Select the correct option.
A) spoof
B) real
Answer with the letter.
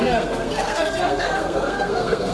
A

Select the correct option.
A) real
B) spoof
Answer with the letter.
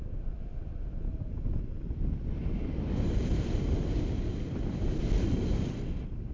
A